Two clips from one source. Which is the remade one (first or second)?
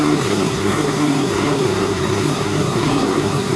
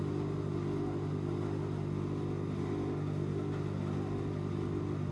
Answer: first